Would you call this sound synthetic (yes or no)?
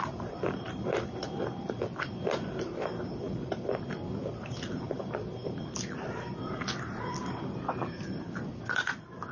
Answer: no